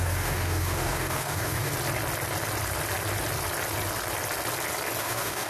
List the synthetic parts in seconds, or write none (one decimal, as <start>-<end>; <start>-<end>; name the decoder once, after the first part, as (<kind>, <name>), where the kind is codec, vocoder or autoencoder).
0.0-1.7 (codec, DAC); 5.0-5.5